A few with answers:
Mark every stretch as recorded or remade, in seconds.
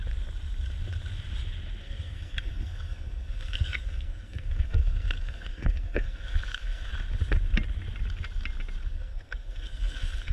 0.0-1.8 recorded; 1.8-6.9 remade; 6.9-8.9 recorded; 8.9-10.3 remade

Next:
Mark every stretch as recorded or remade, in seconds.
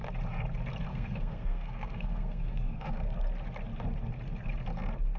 0.0-0.9 recorded; 0.9-2.9 remade; 2.9-5.2 recorded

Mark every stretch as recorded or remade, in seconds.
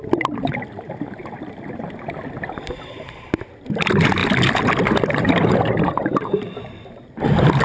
0.0-7.6 recorded